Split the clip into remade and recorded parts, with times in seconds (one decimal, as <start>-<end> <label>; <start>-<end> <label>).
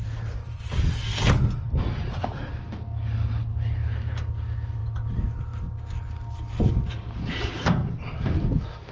0.0-8.9 recorded